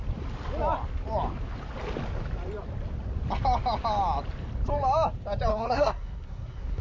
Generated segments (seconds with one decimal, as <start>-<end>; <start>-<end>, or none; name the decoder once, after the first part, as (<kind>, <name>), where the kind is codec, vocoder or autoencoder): 5.5-6.8 (codec, SNAC)